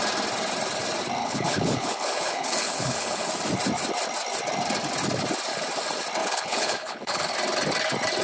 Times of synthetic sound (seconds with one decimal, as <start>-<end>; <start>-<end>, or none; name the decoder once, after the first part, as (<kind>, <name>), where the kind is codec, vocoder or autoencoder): 1.2-3.3 (codec, HILCodec); 6.2-7.3